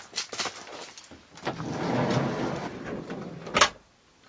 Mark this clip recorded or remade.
recorded